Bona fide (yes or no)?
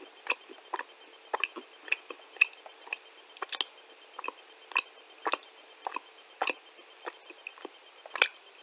yes